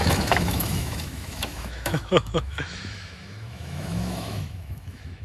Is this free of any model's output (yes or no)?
no